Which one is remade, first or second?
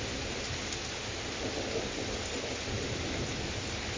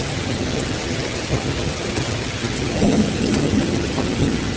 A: second